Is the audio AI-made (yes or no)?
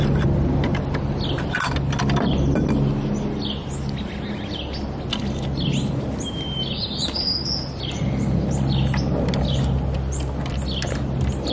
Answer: no